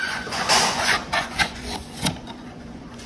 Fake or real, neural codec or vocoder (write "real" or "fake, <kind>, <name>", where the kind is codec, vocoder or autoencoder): fake, vocoder, Vocos